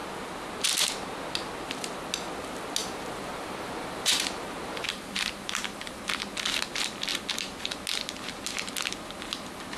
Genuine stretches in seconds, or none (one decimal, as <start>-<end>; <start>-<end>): 0.0-2.8; 6.0-9.8